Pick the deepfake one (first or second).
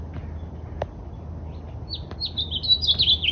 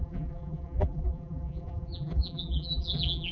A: second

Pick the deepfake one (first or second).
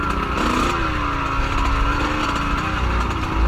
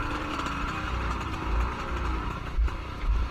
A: second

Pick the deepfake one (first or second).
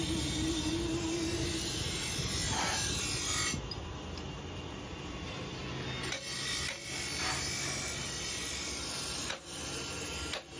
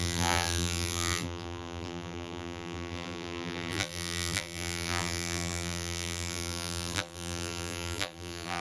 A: second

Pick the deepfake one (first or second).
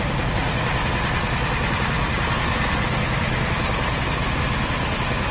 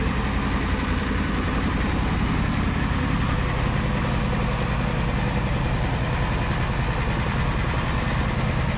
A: first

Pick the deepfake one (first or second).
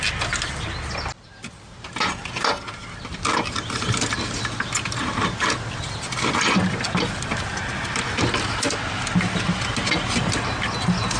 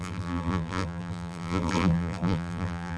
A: second